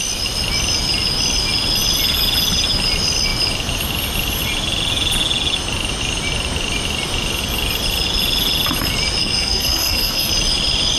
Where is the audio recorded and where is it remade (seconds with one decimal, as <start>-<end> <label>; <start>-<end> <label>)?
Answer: 0.0-9.2 recorded; 9.2-10.3 remade; 10.3-11.0 recorded